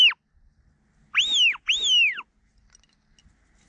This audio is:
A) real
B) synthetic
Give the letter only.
A